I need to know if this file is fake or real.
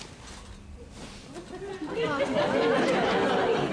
real